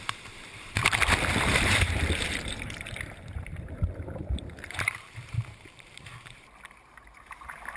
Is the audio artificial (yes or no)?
yes